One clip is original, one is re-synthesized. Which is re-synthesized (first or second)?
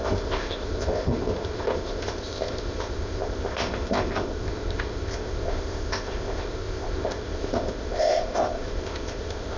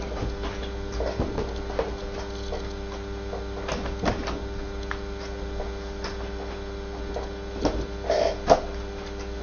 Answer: first